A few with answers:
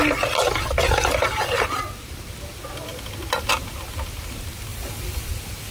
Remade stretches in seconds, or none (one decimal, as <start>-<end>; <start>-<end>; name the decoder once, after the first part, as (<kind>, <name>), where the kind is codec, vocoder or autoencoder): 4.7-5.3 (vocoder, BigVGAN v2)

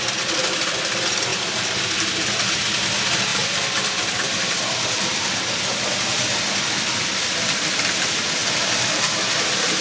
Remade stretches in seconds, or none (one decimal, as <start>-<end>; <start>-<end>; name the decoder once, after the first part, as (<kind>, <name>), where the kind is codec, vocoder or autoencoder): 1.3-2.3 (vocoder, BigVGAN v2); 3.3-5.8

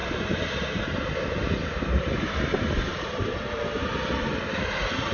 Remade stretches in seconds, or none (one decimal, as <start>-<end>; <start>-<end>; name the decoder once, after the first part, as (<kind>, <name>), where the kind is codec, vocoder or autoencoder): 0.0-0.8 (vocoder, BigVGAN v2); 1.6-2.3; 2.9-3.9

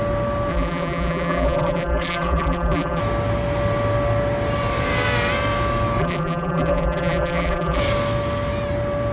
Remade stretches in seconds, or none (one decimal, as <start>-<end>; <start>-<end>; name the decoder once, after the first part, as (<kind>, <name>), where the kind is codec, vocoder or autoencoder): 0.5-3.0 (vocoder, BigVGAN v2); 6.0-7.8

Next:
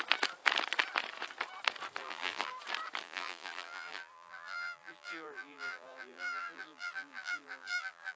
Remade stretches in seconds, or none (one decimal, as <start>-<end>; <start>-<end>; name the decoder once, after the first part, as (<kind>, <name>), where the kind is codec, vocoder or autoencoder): 2.0-2.5 (vocoder, BigVGAN v2); 3.0-8.2

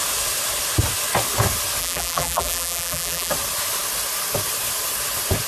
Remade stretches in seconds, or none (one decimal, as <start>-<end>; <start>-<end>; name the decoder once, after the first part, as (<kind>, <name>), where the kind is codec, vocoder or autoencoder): 1.8-3.3 (vocoder, BigVGAN v2)